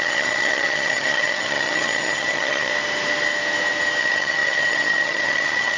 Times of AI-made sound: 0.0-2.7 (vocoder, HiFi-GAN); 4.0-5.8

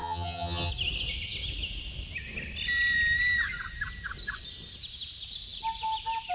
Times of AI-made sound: 0.0-0.7 (vocoder, HiFi-GAN)

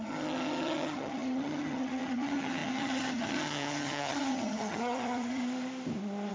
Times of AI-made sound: 0.0-5.4 (vocoder, HiFi-GAN)